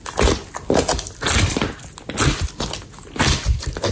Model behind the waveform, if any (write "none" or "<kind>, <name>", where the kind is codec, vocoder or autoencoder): none